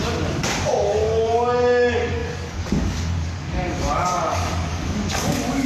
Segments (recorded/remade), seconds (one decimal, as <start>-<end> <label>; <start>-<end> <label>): 0.0-0.7 recorded; 0.7-5.7 remade